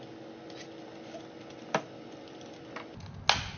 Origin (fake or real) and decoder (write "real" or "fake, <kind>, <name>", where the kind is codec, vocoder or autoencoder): real